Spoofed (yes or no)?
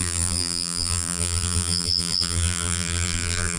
yes